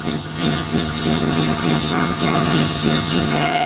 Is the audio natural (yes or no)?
no